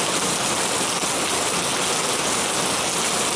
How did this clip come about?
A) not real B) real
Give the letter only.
B